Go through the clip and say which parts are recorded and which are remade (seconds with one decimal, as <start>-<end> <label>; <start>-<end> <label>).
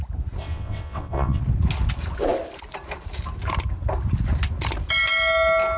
0.0-0.4 recorded; 0.4-1.4 remade; 1.4-5.8 recorded